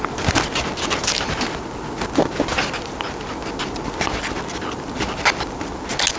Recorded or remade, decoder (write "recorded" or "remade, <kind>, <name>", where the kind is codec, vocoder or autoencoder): recorded